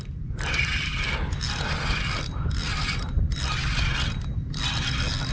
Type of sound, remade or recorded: recorded